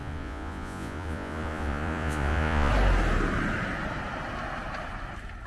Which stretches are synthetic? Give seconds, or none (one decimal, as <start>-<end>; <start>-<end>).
0.0-2.7